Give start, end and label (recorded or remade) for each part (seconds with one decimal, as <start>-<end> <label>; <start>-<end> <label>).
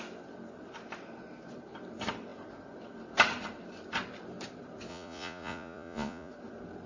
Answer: 0.0-4.9 recorded; 4.9-6.3 remade; 6.3-6.9 recorded